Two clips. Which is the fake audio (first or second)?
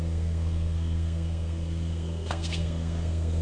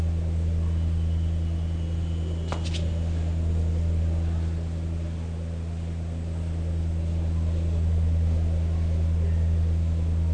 first